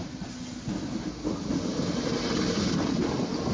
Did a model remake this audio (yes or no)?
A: no